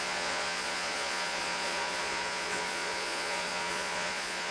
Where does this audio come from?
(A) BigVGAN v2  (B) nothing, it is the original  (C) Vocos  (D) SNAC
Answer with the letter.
C